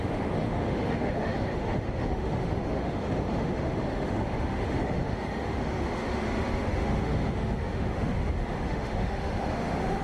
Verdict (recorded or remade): remade